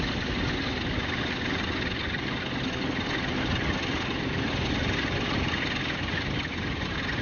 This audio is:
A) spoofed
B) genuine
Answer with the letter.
B